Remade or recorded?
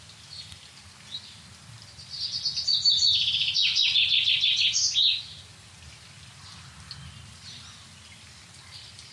recorded